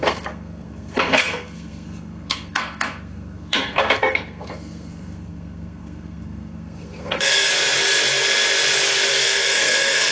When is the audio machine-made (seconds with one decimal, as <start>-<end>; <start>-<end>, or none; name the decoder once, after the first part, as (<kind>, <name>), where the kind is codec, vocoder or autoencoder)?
0.0-7.5 (codec, SNAC); 9.1-10.1